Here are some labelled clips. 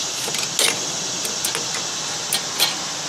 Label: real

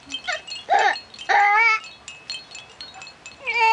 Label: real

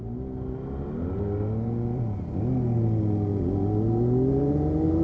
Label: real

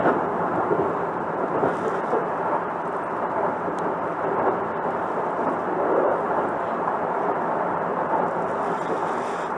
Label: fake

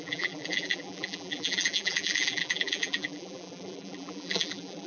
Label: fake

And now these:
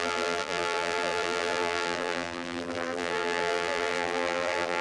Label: fake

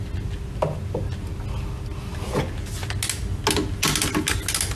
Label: real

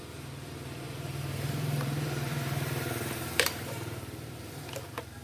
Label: fake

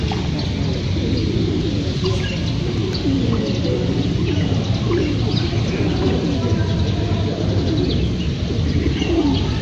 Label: real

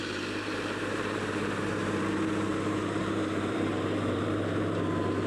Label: fake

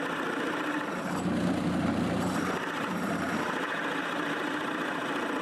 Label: fake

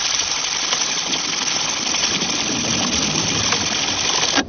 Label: fake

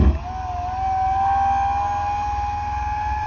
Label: real